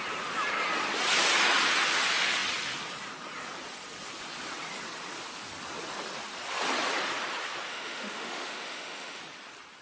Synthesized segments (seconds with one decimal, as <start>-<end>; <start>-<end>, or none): 7.7-9.2